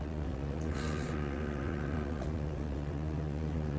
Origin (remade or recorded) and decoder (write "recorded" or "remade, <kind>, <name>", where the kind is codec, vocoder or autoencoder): remade, vocoder, WaveNeXt